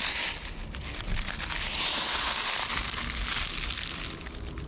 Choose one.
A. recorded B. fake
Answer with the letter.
A